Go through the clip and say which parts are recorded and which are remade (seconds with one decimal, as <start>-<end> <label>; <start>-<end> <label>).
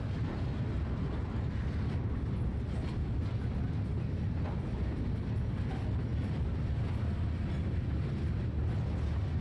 0.0-9.4 recorded